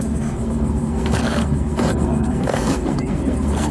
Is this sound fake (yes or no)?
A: yes